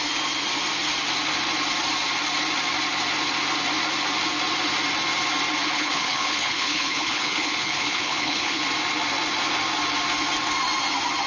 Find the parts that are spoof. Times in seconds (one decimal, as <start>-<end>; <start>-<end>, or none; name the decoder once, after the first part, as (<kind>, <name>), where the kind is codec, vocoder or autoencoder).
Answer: 5.6-8.6 (codec, HILCodec)